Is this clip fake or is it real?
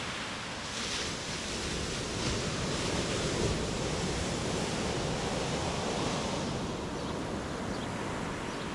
real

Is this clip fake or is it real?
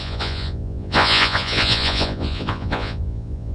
fake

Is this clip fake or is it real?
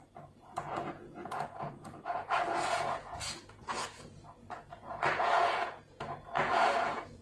fake